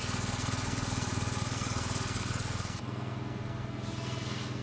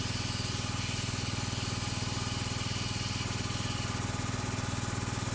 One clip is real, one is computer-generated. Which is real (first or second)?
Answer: second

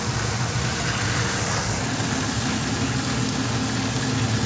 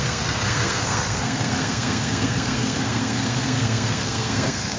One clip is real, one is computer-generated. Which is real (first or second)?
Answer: first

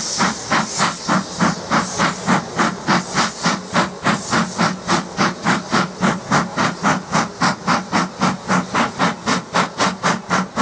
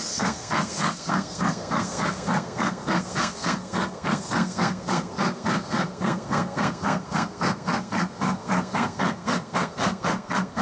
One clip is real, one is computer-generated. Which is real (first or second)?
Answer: first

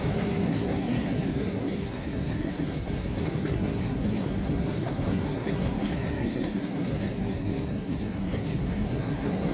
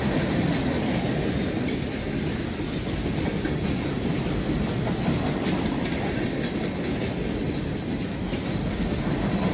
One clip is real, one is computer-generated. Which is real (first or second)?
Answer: second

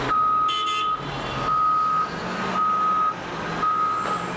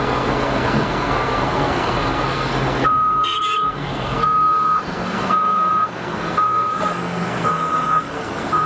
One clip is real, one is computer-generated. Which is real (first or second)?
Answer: first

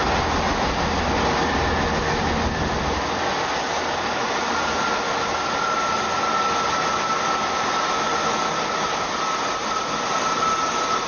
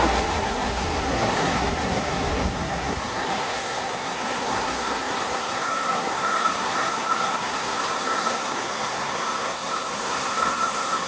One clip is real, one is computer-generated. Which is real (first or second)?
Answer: first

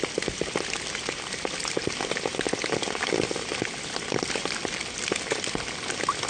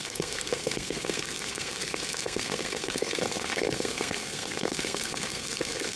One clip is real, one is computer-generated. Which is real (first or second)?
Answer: first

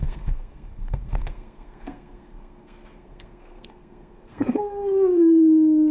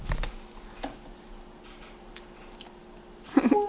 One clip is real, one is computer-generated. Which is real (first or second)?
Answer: second